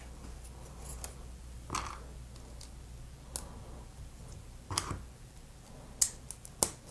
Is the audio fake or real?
real